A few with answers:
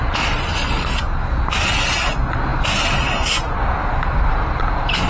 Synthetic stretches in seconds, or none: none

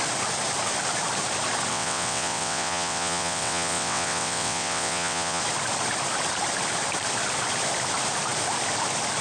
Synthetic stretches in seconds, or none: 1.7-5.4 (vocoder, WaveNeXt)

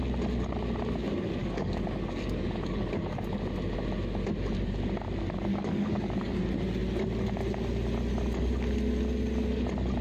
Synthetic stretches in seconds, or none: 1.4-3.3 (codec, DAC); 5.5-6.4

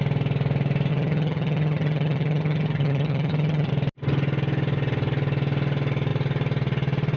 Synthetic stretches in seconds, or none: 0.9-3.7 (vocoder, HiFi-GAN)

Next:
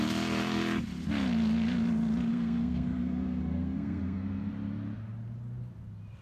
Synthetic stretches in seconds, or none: 2.3-4.5 (codec, SNAC)

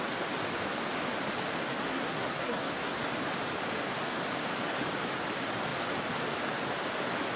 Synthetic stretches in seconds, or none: 1.8-3.0 (codec, SNAC)

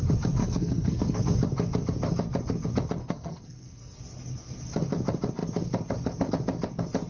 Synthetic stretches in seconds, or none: 0.4-1.2 (codec, SNAC); 3.0-4.0

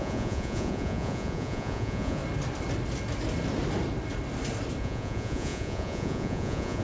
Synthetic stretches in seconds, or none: 0.0-2.2 (vocoder, Vocos); 4.8-6.8